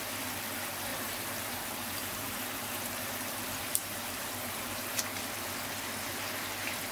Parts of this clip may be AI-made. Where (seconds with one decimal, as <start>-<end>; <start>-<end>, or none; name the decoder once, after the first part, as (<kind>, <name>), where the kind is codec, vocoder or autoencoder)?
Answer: 0.9-5.0 (vocoder, BigVGAN v2)